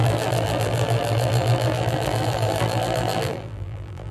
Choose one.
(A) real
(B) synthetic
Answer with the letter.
B